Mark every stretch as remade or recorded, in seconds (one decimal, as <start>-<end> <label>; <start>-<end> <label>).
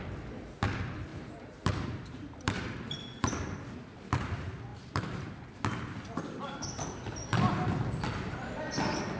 0.0-1.1 recorded; 1.1-3.0 remade; 3.0-4.7 recorded; 4.7-5.3 remade; 5.3-9.2 recorded